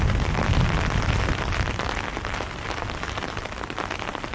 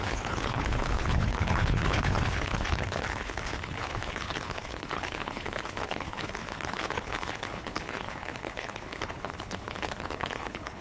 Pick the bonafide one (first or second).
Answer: first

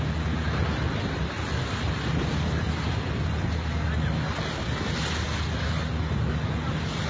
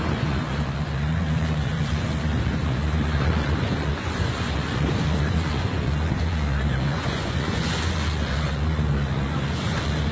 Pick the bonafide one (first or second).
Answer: first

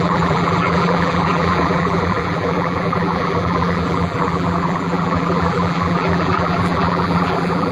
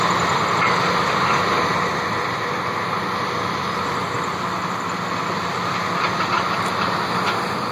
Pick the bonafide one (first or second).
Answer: second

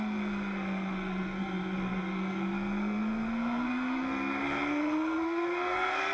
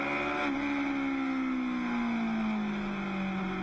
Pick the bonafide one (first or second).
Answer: second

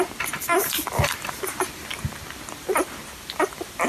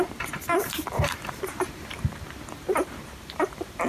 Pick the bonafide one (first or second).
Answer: first